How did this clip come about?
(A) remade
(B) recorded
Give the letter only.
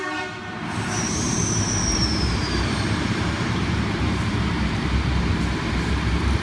A